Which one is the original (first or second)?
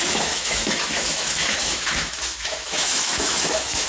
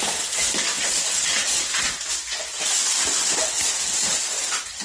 second